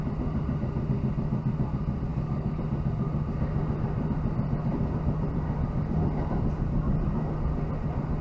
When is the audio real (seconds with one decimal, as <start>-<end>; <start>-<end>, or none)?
0.0-2.1; 2.6-8.2